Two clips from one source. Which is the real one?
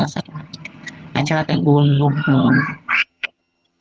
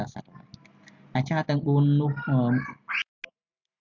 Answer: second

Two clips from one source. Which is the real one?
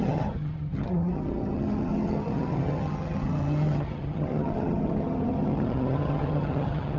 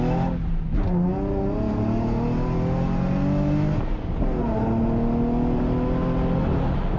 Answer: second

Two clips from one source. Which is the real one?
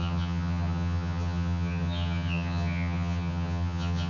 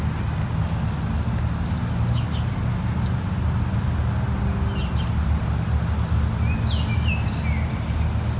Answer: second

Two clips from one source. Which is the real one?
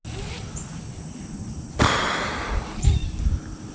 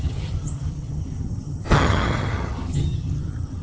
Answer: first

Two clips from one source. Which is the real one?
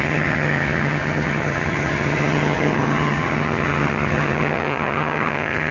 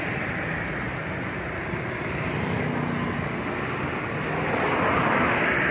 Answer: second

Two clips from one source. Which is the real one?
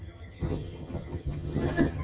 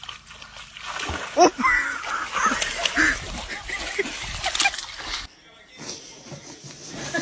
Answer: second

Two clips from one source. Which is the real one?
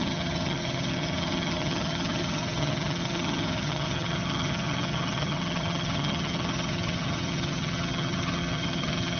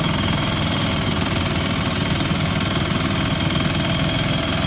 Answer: second